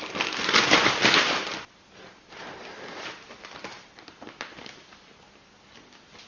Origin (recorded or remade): remade